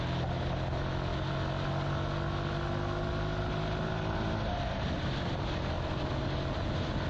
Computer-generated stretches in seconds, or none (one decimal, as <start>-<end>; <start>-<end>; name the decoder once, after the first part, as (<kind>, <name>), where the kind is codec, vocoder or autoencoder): none